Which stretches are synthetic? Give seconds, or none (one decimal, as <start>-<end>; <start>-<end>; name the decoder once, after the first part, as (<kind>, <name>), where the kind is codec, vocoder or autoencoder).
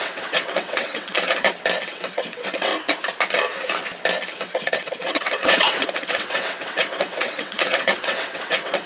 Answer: 0.0-1.2 (vocoder, WaveNeXt); 1.8-2.7; 4.4-8.9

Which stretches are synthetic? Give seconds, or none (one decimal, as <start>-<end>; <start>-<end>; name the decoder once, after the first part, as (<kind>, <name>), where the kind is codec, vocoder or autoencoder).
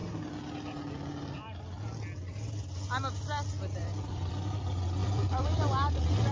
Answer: 3.8-4.3 (vocoder, BigVGAN v2); 5.0-5.6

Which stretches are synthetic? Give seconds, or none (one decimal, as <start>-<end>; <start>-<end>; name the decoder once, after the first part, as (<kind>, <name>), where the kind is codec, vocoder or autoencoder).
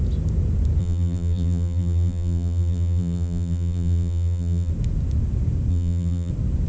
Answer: 0.8-4.7 (vocoder, BigVGAN v2); 5.7-6.3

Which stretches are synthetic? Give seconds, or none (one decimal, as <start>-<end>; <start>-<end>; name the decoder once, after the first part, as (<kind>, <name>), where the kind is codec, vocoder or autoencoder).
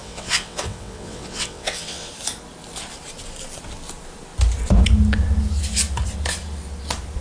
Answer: 0.0-2.1 (vocoder, WaveNeXt)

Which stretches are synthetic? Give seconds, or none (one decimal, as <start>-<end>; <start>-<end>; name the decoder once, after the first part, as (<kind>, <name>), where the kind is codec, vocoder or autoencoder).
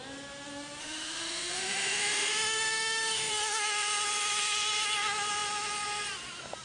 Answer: 0.8-3.3 (autoencoder, DAC-VAE)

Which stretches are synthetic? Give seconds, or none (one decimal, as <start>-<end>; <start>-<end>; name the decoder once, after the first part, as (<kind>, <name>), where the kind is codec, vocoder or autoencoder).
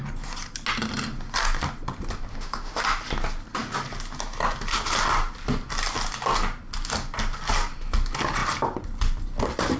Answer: 2.3-2.8 (autoencoder, DAC-VAE)